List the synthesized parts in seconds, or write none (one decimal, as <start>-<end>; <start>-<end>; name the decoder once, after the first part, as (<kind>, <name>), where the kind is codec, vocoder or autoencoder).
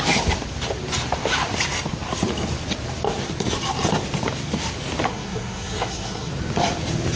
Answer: 5.1-6.3 (codec, SNAC)